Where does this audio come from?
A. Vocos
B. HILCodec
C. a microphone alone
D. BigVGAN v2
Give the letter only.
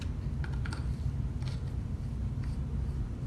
C